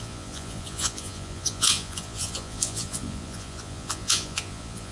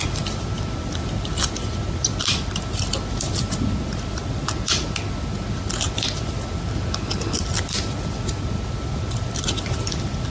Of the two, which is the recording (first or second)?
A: second